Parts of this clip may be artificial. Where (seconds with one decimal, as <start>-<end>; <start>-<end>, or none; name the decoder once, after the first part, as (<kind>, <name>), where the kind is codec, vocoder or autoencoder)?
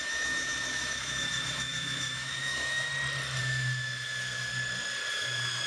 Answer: 0.0-2.9 (autoencoder, DAC-VAE); 3.4-4.5; 5.1-5.7